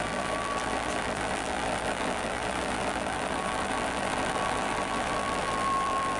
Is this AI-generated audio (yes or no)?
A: yes